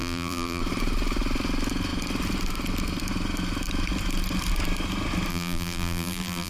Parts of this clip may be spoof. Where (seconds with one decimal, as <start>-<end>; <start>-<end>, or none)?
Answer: 0.0-0.6; 5.3-6.5

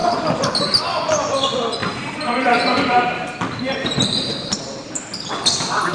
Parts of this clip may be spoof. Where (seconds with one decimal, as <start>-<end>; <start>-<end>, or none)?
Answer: 1.8-5.3

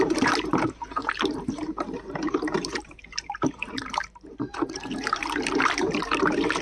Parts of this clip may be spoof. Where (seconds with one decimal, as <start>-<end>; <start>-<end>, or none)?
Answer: 0.0-6.6

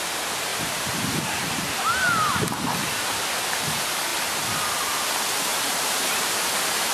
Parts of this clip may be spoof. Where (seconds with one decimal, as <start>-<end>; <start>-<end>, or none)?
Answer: 0.5-1.8; 5.5-6.5

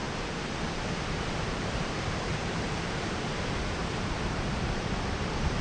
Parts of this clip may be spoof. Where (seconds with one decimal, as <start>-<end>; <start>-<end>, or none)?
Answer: 0.0-3.4; 3.8-5.6

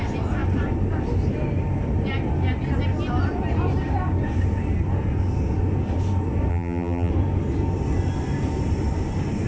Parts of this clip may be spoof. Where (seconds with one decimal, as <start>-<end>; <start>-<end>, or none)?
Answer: 6.5-7.1

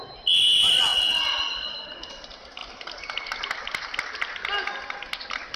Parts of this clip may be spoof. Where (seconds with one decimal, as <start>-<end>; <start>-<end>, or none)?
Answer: none

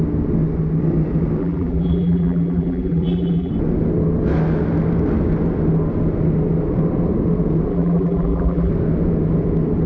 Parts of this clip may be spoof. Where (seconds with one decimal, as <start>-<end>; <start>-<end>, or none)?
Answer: 1.4-3.5; 7.7-8.7